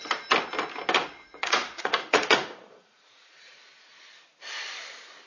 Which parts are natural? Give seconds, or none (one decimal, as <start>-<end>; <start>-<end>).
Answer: 0.0-1.0; 3.5-5.3